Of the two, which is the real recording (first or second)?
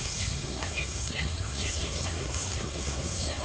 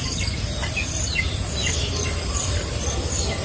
second